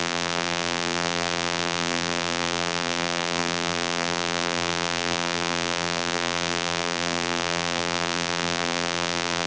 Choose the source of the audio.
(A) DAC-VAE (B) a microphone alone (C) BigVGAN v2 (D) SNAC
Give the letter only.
C